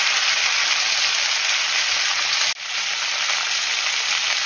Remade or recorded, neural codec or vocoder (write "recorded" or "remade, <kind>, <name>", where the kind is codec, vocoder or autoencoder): recorded